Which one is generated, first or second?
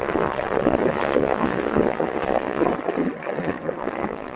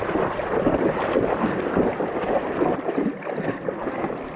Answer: first